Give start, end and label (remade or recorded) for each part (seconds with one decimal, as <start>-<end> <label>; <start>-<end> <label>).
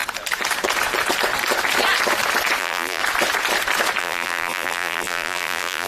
0.0-2.6 recorded; 2.6-3.0 remade; 3.0-4.0 recorded; 4.0-5.9 remade